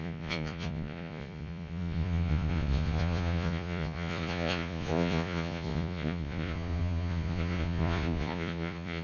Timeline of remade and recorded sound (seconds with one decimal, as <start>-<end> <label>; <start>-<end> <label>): 0.0-9.0 remade